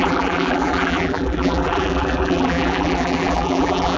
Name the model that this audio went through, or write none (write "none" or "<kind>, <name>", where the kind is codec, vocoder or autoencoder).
vocoder, BigVGAN v2